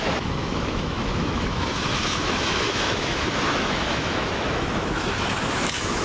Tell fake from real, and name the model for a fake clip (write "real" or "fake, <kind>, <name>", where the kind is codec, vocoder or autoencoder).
fake, autoencoder, DAC-VAE